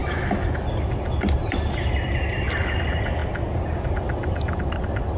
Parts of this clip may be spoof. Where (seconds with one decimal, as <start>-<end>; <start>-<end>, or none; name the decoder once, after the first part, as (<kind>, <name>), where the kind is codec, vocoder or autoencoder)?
0.0-0.6 (autoencoder, DAC-VAE)